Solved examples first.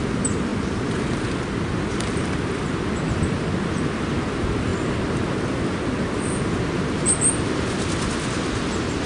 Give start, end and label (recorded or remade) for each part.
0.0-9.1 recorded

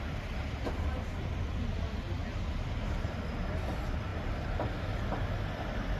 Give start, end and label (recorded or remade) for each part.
0.0-6.0 recorded

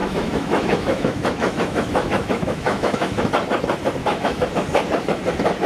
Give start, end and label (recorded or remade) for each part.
0.0-3.3 remade; 3.3-4.0 recorded; 4.0-4.5 remade; 4.5-5.7 recorded

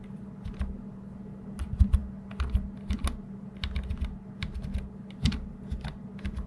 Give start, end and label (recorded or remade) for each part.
0.0-6.5 recorded